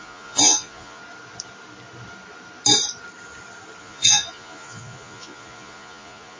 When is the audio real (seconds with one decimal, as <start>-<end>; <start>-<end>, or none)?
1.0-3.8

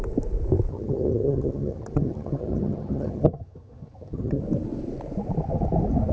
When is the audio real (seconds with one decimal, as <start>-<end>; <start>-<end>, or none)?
0.0-0.7; 4.4-6.1

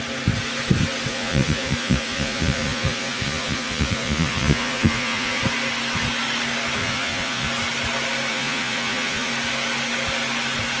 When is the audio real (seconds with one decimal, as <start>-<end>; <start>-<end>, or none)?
0.0-1.1; 5.4-6.8; 7.5-8.3; 9.3-10.8